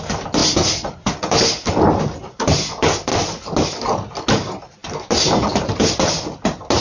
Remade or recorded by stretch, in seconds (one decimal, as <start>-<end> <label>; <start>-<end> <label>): 0.0-6.8 recorded